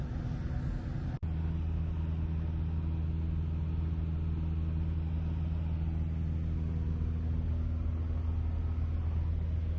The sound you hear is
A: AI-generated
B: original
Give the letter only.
B